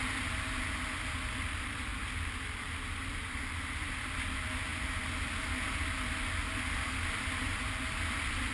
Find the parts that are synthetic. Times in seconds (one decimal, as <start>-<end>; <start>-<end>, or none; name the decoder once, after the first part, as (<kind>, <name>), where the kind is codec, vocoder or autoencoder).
none